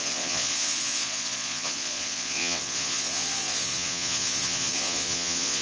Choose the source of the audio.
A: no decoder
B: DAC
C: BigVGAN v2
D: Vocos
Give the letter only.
D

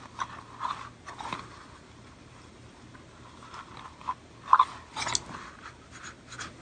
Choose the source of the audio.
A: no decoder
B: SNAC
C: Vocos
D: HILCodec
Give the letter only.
A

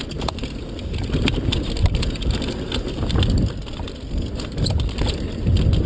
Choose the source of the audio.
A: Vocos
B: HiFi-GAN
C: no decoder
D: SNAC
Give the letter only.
C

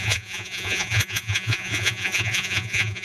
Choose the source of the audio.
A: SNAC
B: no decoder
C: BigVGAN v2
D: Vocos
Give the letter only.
D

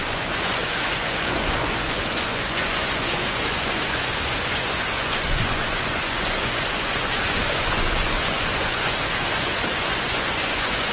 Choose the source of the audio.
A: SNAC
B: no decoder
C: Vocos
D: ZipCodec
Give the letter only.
C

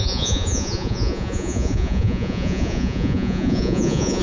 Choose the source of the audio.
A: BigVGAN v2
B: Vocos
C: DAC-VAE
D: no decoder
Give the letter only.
B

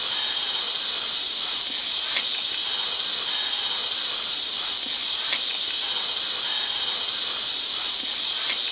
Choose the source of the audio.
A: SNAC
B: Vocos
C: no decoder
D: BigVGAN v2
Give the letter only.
C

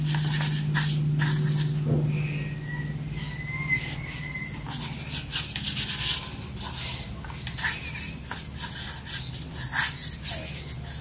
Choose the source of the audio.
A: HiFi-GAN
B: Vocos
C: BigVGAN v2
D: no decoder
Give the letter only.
D